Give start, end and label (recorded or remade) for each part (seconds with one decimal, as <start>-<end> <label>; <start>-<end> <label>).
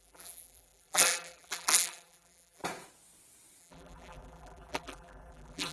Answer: 0.0-2.6 remade; 2.6-3.6 recorded; 3.6-5.7 remade